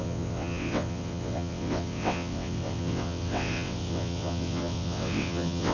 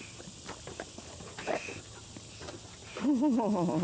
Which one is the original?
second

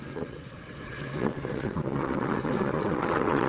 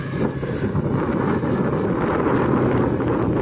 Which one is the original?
second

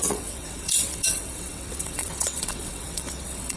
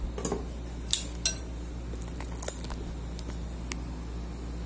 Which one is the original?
second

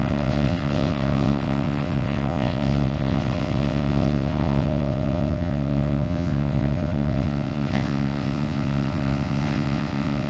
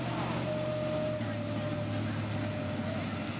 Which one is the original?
second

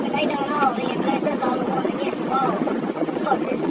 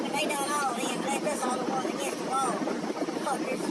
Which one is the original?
second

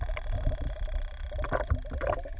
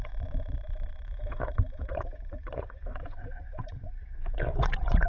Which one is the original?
first